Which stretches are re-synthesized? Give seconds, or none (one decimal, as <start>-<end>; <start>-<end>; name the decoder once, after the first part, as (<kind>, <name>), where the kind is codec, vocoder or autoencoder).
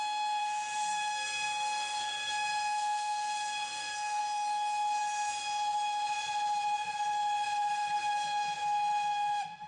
0.4-4.2 (codec, SNAC)